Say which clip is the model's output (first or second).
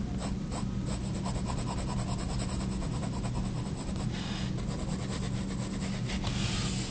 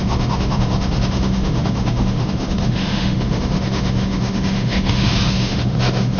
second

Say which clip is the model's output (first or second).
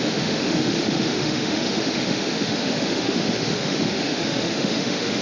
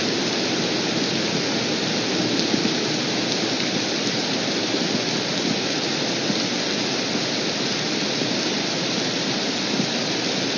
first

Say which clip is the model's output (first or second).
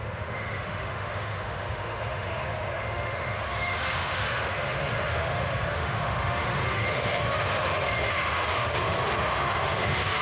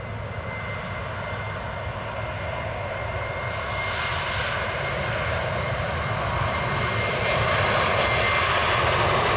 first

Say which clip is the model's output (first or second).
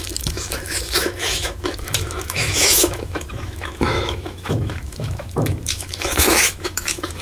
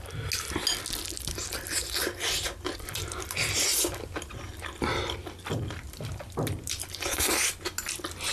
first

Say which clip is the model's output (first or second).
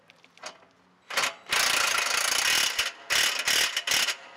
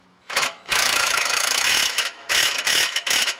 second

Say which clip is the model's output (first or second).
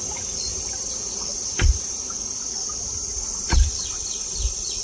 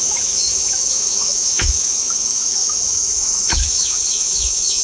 second